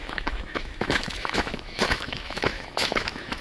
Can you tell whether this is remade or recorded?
remade